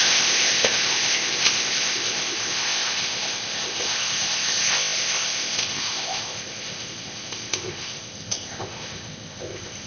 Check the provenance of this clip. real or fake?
fake